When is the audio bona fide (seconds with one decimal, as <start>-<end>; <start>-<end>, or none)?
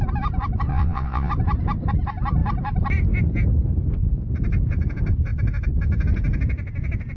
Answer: 0.0-0.7; 1.3-7.2